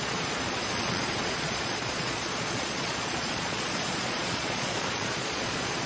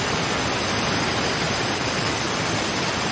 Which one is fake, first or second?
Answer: first